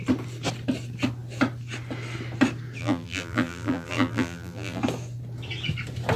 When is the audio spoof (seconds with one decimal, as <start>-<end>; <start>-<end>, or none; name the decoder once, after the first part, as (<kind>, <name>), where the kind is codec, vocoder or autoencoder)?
2.8-4.8 (vocoder, BigVGAN v2)